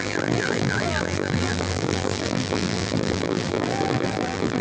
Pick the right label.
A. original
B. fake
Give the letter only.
B